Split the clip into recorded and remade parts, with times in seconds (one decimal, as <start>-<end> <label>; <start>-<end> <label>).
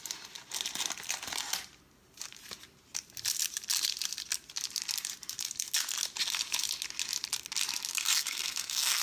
0.0-7.9 recorded; 7.9-9.0 remade